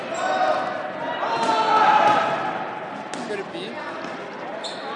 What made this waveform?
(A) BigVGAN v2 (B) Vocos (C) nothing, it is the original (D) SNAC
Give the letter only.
C